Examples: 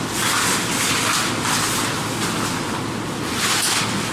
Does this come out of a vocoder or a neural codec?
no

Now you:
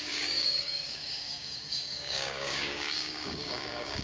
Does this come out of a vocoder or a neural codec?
yes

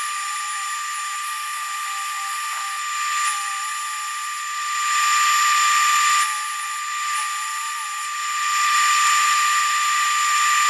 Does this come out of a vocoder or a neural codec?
no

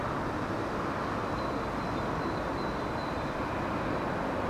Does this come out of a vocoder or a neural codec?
no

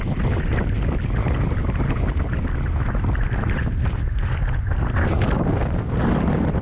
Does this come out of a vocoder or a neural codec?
no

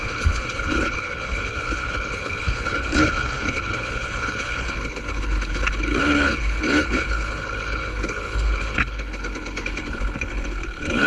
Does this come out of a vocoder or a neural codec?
yes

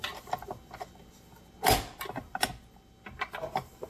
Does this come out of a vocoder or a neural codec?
no